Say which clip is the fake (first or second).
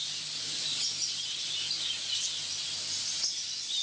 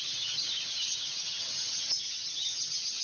second